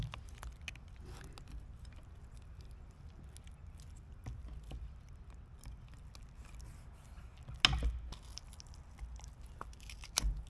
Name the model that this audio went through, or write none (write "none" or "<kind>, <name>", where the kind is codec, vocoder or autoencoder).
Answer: none